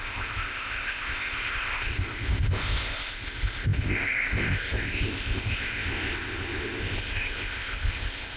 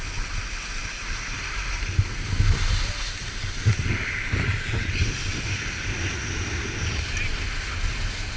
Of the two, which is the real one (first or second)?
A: second